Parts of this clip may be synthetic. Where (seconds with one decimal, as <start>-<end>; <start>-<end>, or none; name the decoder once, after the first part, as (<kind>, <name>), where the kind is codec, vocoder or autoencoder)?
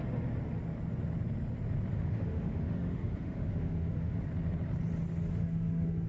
1.9-4.2 (autoencoder, DAC-VAE); 5.3-6.1